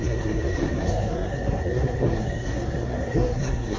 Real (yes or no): no